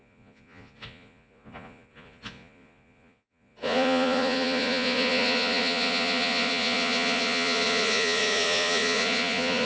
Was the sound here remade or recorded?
remade